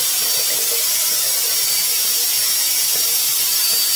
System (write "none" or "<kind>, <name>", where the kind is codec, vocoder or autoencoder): none